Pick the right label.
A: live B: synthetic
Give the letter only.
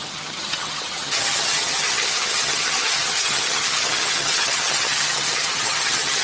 B